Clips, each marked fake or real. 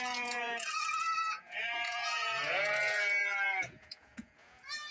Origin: fake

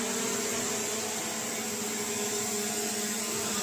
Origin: real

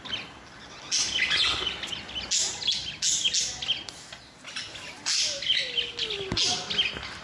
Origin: real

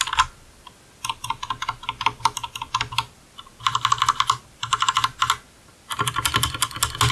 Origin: real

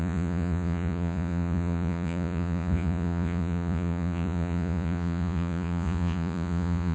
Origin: fake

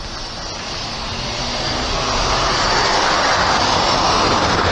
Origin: real